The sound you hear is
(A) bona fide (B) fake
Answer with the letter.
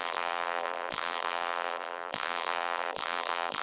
B